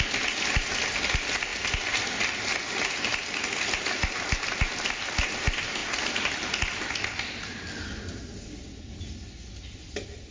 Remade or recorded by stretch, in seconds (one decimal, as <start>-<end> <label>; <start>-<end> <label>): 0.0-10.3 recorded